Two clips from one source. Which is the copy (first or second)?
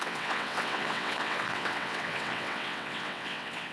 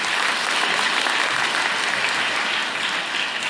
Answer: first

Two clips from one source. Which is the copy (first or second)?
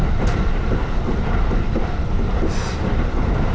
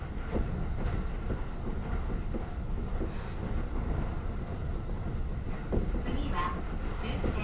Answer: first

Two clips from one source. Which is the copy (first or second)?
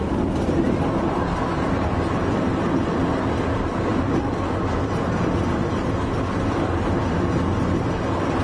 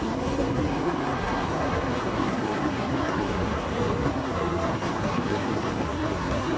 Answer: second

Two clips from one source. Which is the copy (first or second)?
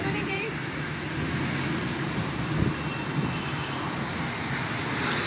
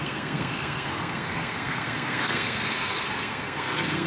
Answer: second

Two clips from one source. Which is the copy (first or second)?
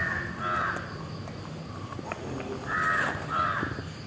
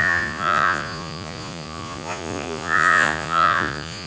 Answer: second